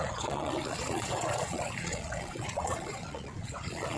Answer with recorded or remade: remade